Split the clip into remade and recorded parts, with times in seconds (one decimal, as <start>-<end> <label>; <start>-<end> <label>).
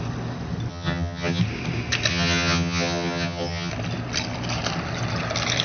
0.0-0.7 recorded; 0.7-1.4 remade; 1.4-2.1 recorded; 2.1-3.7 remade; 3.7-5.6 recorded